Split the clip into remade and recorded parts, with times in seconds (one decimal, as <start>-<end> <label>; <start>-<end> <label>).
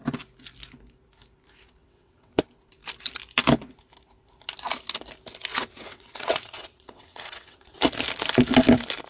0.0-1.8 recorded; 1.8-2.4 remade; 2.4-5.5 recorded; 5.5-7.8 remade; 7.8-9.1 recorded